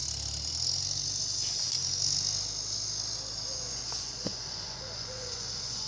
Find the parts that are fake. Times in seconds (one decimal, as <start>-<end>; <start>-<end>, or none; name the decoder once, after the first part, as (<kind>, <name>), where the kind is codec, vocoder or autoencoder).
3.5-5.9 (vocoder, Vocos)